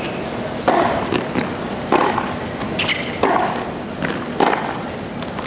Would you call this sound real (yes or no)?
yes